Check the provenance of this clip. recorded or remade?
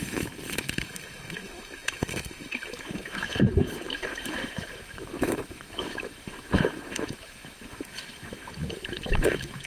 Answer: remade